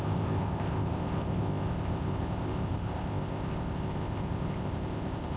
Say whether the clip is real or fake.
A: fake